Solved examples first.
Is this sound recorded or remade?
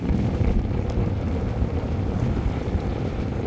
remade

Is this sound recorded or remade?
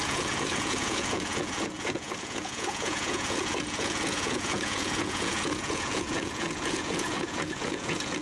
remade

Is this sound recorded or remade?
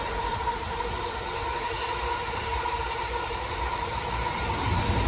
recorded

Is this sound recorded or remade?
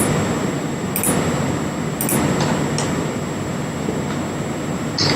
recorded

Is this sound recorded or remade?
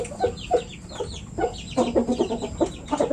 recorded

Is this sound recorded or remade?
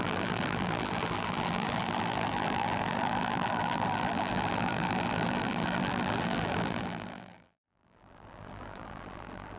remade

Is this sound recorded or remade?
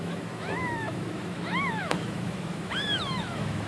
remade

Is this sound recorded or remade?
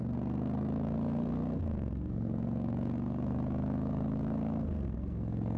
remade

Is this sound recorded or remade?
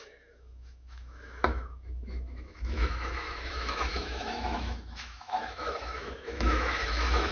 remade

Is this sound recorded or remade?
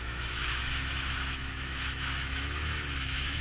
remade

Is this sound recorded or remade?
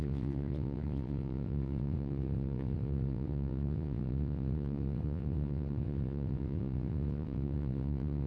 remade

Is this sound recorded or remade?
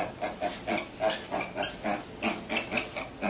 recorded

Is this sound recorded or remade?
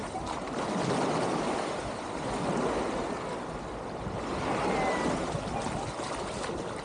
recorded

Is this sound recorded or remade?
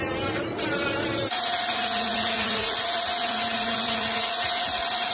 remade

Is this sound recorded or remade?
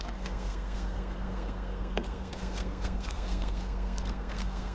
remade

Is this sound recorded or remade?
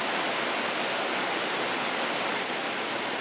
recorded